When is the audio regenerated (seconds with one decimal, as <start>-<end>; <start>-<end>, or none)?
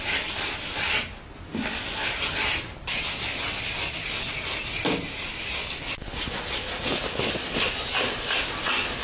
1.5-2.0